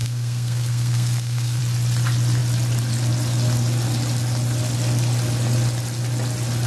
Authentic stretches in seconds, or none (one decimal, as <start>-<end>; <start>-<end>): 1.6-6.7